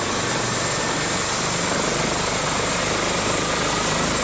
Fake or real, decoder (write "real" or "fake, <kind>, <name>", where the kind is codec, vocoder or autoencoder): real